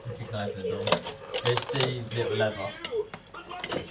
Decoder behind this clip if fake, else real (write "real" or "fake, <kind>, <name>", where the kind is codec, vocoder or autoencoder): real